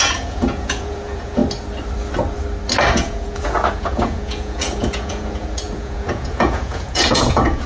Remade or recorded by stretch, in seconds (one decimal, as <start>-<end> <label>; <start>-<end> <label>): 0.0-1.4 remade; 1.4-2.9 recorded; 2.9-7.7 remade